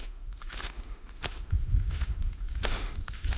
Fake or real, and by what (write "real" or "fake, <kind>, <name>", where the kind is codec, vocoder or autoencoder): fake, autoencoder, DAC-VAE